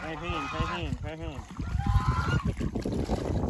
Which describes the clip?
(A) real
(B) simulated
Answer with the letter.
A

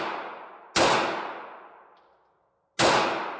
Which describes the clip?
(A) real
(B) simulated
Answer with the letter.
A